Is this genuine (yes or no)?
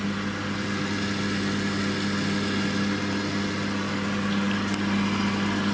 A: yes